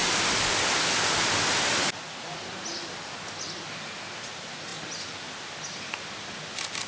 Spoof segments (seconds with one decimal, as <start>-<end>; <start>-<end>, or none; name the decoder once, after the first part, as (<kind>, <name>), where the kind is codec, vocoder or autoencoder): none